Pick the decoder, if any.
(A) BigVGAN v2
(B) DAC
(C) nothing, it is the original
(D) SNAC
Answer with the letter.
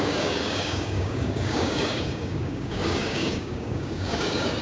B